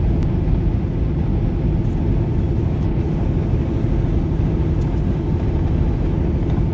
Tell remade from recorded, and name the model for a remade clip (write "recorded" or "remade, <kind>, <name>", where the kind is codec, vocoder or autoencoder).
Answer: recorded